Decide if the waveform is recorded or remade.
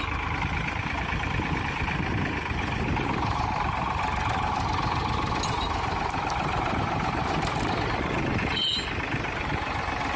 recorded